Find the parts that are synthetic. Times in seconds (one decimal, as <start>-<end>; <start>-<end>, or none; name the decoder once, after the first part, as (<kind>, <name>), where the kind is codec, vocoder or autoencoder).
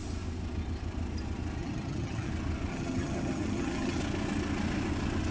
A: 1.6-2.3 (vocoder, HiFi-GAN); 2.7-4.0